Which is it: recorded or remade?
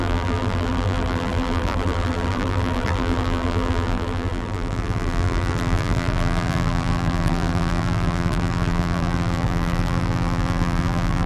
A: remade